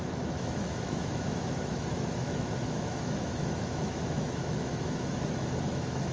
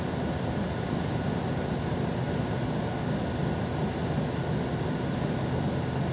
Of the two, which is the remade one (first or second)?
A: first